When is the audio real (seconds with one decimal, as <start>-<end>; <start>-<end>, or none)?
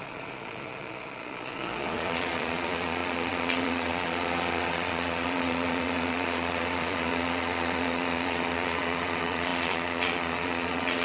none